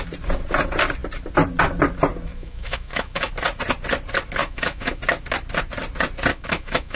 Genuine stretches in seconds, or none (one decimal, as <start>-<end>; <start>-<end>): 0.0-2.3; 3.3-4.4; 5.0-6.3